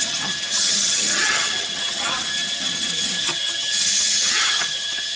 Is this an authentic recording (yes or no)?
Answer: no